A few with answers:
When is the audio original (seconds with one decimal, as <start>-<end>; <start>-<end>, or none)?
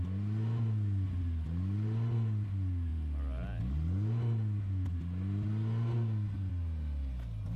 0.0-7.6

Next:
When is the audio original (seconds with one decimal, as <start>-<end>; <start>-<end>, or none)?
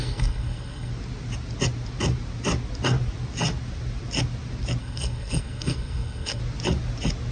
0.9-4.8; 6.4-7.3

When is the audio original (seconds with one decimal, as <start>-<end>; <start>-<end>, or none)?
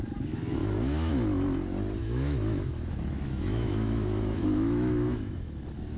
0.0-0.6; 1.1-2.0; 5.6-6.0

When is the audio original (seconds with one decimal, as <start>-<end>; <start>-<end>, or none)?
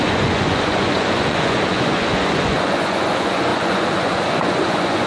none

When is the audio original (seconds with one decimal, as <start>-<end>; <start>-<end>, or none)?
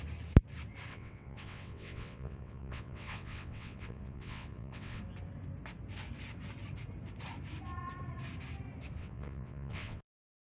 0.0-0.9; 5.0-9.0